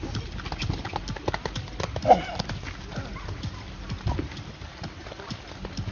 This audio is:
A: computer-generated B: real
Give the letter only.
B